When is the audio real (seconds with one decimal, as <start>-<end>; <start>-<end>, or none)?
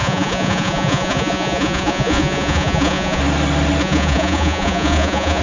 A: 3.2-3.8